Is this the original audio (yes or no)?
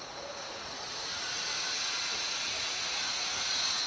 no